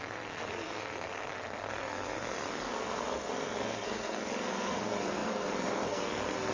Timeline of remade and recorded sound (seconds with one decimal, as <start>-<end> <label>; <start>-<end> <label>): 0.0-6.5 remade